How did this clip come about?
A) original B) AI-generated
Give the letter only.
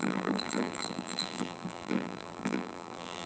B